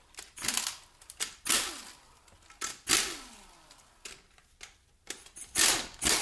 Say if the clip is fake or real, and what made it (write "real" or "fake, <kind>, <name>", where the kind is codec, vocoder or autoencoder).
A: real